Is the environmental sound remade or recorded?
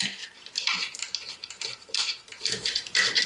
remade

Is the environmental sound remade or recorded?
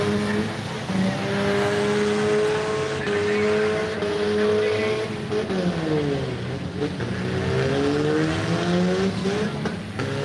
recorded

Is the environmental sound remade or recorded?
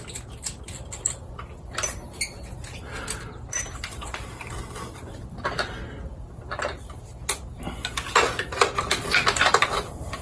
recorded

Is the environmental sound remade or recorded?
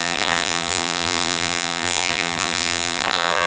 remade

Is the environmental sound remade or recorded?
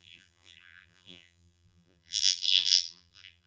remade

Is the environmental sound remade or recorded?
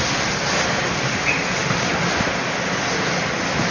recorded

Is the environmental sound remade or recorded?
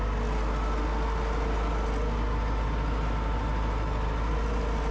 recorded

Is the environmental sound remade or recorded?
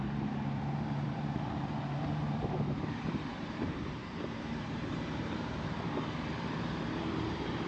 remade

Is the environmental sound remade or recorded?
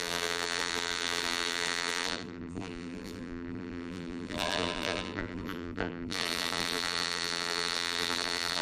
remade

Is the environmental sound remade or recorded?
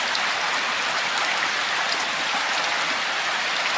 recorded